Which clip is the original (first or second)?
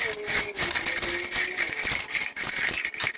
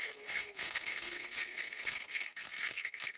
first